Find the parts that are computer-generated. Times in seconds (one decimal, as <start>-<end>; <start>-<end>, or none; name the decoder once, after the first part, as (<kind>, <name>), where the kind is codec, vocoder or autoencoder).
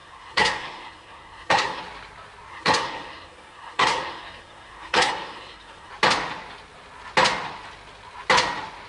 0.0-1.8 (codec, SNAC); 2.5-5.9